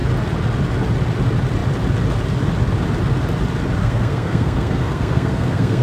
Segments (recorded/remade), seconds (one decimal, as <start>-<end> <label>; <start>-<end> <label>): 0.0-3.8 recorded; 3.8-5.8 remade